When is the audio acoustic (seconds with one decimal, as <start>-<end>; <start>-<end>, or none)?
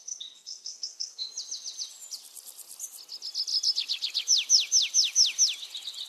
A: 1.3-6.1